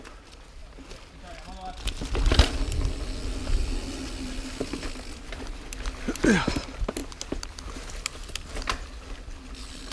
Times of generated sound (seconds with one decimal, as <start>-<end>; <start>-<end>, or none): none